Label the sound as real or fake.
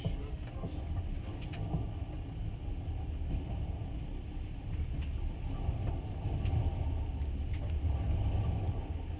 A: real